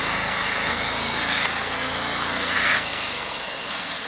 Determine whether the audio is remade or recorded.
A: remade